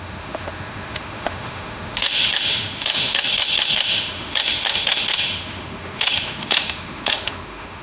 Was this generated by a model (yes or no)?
yes